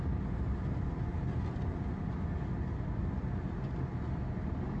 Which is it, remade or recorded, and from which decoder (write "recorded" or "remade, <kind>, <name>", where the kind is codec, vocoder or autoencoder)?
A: recorded